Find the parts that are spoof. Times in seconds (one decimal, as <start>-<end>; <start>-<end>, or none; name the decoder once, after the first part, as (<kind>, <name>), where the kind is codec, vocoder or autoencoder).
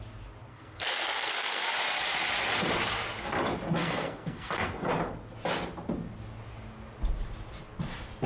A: 0.5-1.6 (codec, SNAC); 3.8-4.9